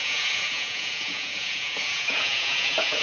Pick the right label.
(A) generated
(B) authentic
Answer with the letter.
A